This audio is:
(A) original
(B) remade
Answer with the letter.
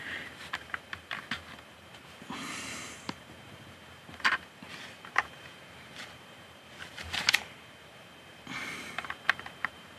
B